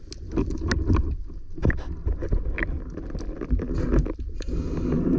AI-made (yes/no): no